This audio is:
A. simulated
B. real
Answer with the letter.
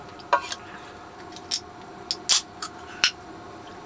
B